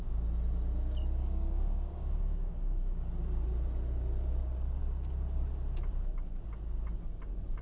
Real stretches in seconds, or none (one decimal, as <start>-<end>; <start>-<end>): 0.0-1.2; 3.1-7.6